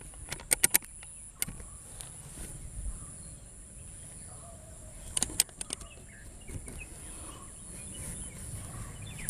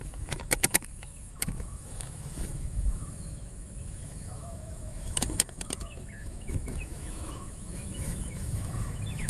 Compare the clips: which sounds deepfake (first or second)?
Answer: second